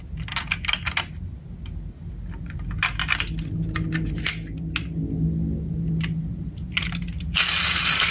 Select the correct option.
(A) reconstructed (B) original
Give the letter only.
B